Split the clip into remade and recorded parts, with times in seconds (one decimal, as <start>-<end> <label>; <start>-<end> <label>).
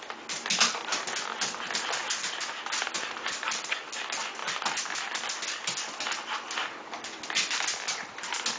0.0-8.6 recorded